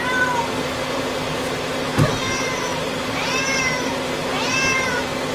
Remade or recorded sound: recorded